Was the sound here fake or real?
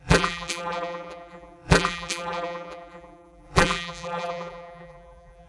fake